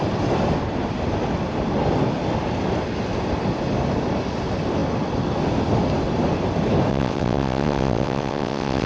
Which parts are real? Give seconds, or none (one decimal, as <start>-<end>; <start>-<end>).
0.0-6.9